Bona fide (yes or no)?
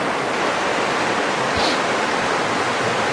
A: yes